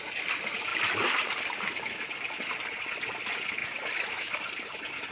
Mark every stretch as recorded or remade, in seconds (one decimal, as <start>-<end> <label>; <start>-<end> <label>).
0.0-0.7 remade; 0.7-1.6 recorded; 1.6-3.6 remade; 3.6-4.2 recorded; 4.2-5.1 remade